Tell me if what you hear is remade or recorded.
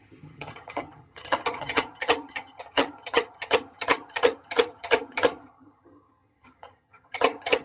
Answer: remade